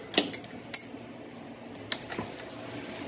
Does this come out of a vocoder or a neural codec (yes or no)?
no